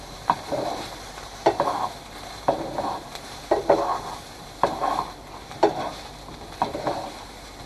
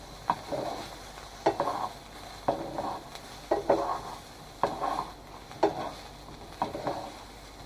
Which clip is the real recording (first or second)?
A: second